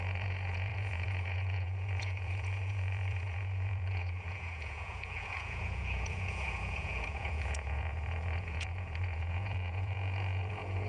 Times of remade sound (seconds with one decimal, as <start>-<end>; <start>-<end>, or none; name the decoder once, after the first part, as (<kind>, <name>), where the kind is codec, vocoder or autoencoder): 0.0-10.9 (vocoder, Vocos)